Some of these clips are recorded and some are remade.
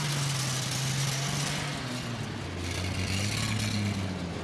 recorded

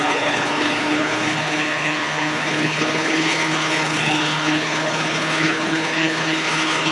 remade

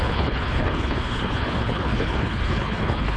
remade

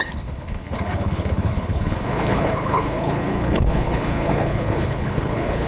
remade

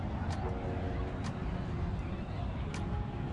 recorded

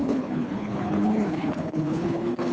remade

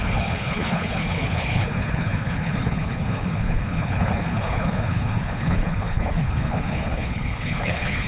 remade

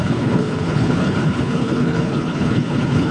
remade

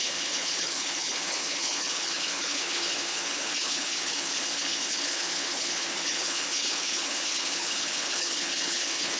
remade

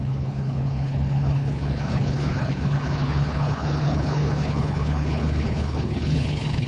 remade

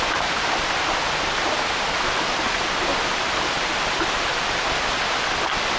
recorded